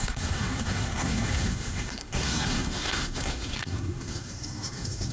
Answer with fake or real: fake